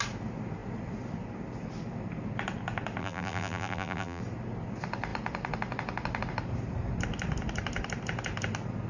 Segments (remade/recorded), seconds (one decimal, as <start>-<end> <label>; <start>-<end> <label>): 0.0-3.0 recorded; 3.0-4.2 remade; 4.2-8.9 recorded